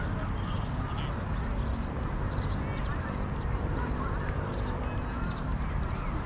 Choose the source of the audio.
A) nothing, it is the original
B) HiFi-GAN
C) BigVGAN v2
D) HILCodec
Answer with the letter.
A